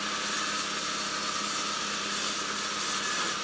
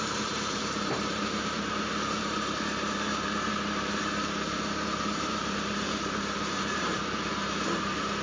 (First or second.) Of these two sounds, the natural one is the first